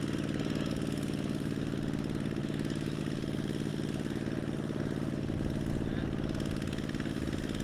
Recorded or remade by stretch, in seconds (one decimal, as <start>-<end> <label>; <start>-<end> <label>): 0.0-2.4 recorded; 2.4-3.0 remade; 3.0-7.6 recorded